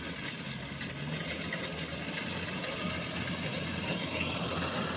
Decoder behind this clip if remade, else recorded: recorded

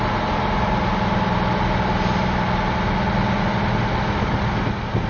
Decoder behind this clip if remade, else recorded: recorded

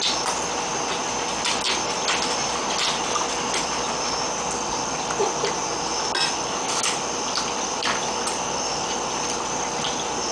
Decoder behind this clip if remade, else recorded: recorded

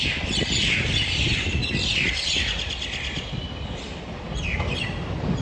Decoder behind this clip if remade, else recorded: recorded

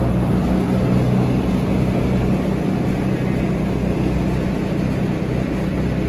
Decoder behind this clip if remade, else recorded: recorded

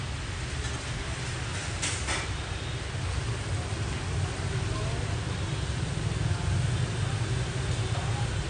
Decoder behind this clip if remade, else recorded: recorded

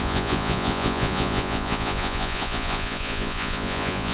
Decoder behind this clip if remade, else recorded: remade, vocoder, Vocos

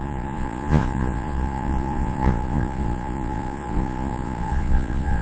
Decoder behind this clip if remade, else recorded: remade, vocoder, Vocos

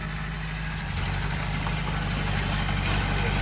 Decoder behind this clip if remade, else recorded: recorded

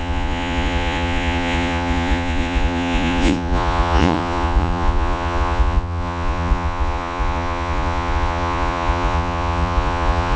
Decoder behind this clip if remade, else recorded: remade, vocoder, Vocos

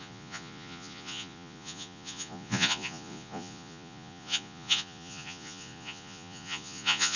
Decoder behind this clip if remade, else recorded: remade, vocoder, Vocos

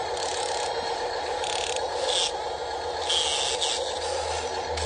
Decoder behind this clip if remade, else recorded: recorded